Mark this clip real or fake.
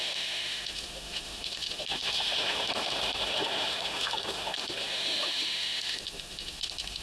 fake